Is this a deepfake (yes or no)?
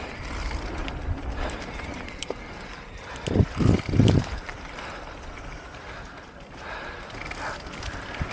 yes